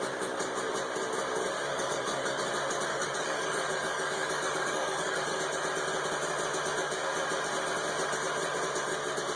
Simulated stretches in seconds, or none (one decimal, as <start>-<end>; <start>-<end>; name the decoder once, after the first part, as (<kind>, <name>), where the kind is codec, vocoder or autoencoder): 1.7-2.5 (codec, DAC); 2.9-5.4